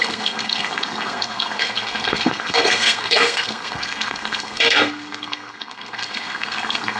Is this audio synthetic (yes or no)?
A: yes